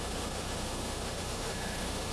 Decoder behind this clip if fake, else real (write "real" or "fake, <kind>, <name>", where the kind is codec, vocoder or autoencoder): fake, autoencoder, DAC-VAE